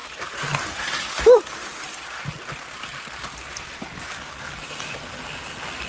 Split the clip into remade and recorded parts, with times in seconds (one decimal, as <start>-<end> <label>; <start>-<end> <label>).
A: 0.0-5.9 recorded